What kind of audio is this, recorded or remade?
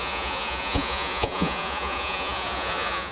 remade